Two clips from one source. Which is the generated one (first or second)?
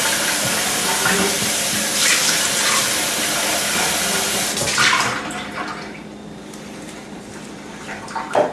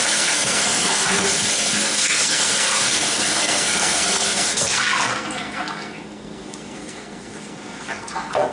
second